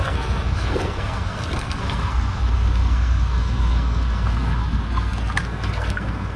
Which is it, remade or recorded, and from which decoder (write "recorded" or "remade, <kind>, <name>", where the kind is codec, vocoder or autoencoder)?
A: remade, codec, SNAC